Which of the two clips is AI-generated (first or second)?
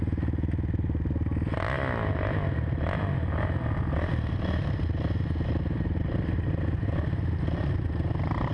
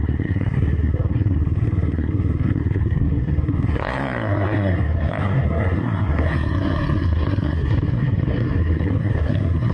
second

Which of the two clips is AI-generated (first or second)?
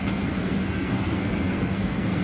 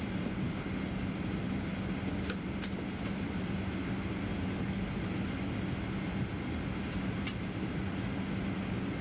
first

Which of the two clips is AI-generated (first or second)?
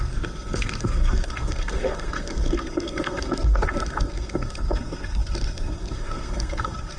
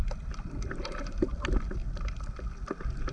first